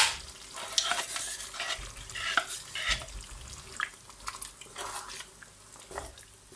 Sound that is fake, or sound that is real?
real